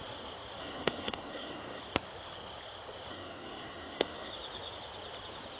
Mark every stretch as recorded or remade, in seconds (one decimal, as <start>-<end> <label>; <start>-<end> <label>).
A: 0.0-0.6 recorded; 0.6-1.8 remade; 1.8-3.1 recorded; 3.1-4.3 remade; 4.3-5.6 recorded